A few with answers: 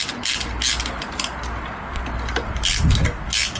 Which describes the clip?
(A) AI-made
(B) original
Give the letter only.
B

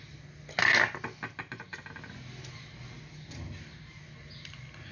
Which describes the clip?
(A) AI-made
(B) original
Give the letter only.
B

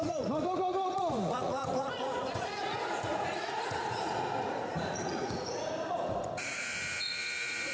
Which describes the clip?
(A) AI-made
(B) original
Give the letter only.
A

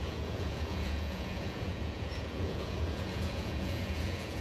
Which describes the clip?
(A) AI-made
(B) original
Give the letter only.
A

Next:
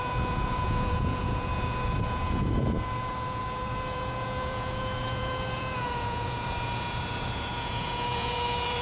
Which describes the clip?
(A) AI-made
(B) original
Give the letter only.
A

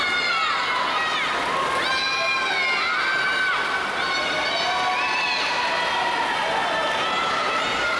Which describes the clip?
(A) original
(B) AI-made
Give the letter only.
A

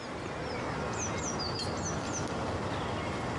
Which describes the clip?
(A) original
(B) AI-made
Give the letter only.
A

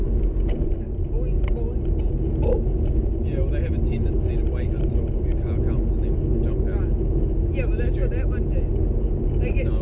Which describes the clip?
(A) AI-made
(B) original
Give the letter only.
B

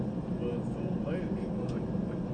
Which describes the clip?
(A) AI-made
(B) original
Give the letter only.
B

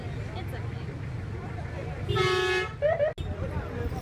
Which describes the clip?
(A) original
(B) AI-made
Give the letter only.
A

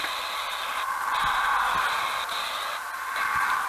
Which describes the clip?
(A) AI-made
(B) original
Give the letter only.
B